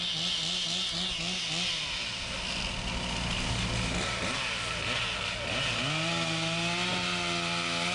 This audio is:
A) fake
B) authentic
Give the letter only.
B